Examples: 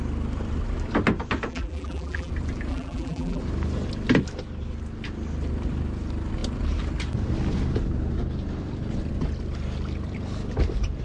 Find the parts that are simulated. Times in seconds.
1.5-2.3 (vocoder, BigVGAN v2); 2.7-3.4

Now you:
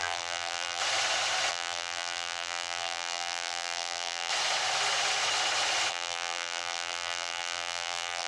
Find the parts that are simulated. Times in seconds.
0.0-0.8 (vocoder, BigVGAN v2); 1.5-4.3; 5.9-8.3

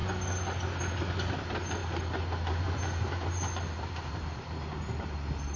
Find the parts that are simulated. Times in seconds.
1.3-1.8 (vocoder, BigVGAN v2); 2.5-5.6

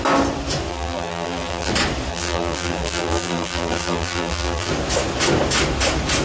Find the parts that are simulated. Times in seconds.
0.7-1.7 (vocoder, BigVGAN v2); 2.1-4.7

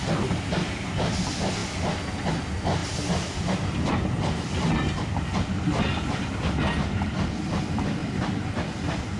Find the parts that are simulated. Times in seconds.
2.8-3.9 (vocoder, BigVGAN v2); 8.0-8.6

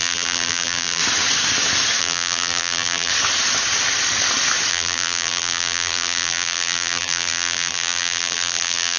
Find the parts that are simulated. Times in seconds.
0.0-1.0 (vocoder, BigVGAN v2); 2.0-3.1; 4.7-9.0

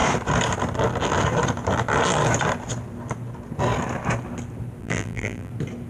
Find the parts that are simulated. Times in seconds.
4.8-5.5 (vocoder, BigVGAN v2)

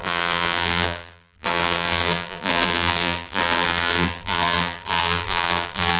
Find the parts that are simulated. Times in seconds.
0.0-6.0 (vocoder, BigVGAN v2)